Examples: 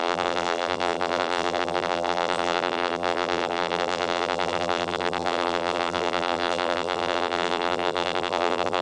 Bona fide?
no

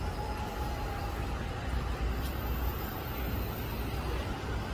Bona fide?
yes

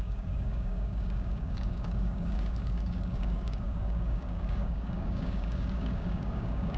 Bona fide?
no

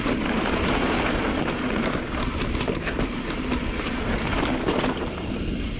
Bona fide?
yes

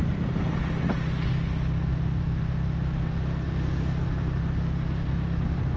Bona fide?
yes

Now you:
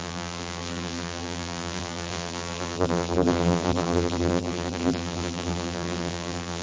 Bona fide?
no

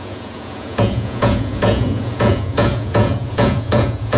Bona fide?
no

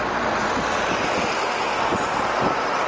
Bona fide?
yes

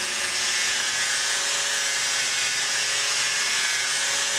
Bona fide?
no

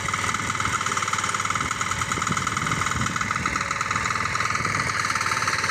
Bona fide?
yes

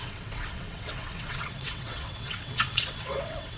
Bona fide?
no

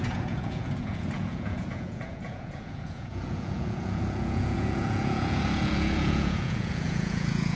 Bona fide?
no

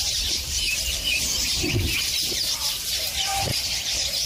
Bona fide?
no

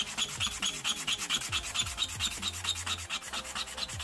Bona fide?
yes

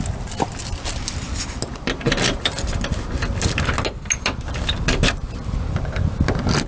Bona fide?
yes